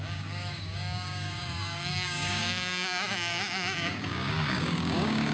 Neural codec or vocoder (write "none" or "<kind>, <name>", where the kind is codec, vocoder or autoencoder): codec, DAC